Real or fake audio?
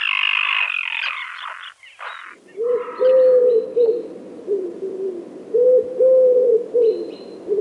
real